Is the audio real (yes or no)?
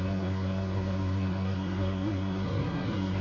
no